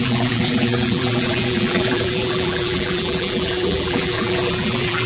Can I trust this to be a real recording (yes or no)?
no